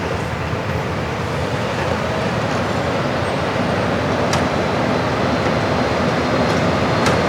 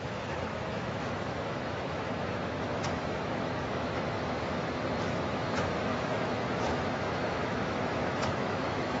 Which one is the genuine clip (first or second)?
first